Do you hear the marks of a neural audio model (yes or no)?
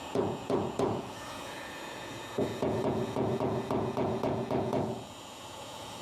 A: yes